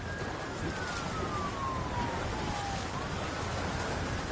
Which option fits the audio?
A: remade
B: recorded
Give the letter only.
B